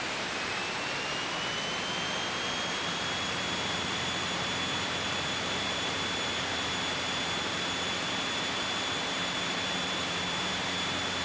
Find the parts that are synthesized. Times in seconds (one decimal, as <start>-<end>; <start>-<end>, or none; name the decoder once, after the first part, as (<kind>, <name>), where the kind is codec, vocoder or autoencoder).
0.0-0.6 (vocoder, BigVGAN v2); 2.7-11.2